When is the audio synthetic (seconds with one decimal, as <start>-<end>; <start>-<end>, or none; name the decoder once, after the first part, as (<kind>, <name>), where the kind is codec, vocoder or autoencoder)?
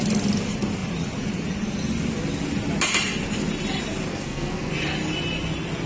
4.1-4.7 (codec, SNAC)